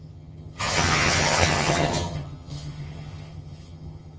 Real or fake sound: fake